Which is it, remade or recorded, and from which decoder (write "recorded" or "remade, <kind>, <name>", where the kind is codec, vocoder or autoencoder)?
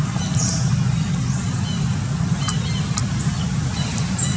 recorded